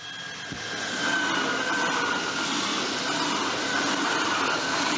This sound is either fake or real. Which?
real